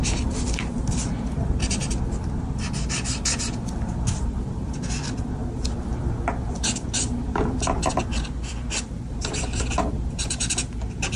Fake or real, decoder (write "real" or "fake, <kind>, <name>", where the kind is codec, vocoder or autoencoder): real